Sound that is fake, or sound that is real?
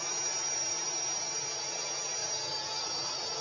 real